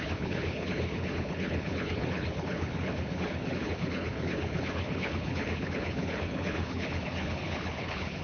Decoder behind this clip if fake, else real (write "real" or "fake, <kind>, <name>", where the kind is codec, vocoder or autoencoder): fake, codec, HILCodec